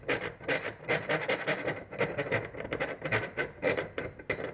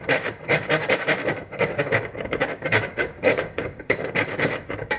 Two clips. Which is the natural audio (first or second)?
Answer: first